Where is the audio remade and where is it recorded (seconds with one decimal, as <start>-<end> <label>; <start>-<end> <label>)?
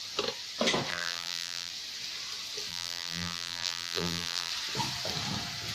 0.0-0.9 recorded; 0.9-1.7 remade; 1.7-2.7 recorded; 2.7-4.5 remade; 4.5-5.7 recorded